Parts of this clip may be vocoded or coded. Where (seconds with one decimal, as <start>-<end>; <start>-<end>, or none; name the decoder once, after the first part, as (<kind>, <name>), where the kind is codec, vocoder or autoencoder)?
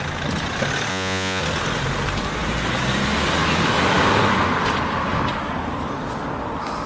0.9-1.4 (vocoder, Vocos)